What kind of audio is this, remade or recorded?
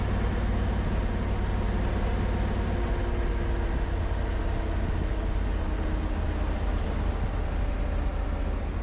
recorded